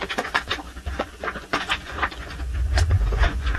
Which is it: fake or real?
fake